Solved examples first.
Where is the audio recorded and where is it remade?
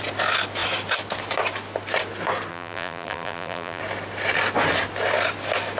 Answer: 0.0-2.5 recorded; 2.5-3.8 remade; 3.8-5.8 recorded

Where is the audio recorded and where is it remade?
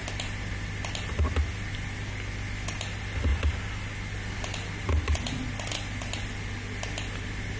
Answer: 0.0-7.6 recorded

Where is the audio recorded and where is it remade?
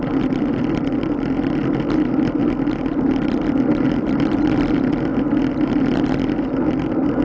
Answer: 0.0-1.6 remade; 1.6-2.9 recorded; 2.9-5.1 remade; 5.1-6.6 recorded; 6.6-7.2 remade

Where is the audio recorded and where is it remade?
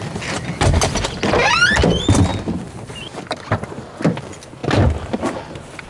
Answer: 0.0-5.9 recorded